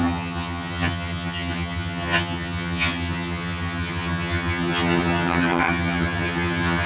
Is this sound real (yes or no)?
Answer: no